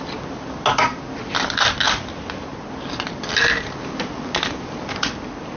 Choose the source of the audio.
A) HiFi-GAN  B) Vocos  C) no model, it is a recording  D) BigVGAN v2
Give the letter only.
C